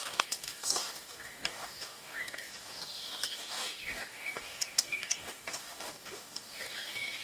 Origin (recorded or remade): remade